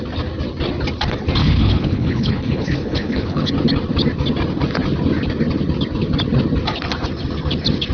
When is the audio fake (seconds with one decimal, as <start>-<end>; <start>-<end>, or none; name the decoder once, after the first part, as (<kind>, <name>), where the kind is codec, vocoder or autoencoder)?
1.4-3.5 (codec, HILCodec)